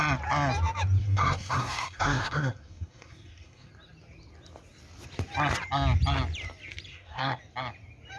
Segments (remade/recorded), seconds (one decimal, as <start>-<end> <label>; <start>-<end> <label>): 0.0-1.0 recorded; 1.0-3.7 remade; 3.7-6.9 recorded; 6.9-7.4 remade; 7.4-8.2 recorded